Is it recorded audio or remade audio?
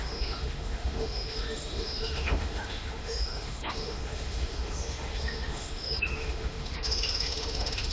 remade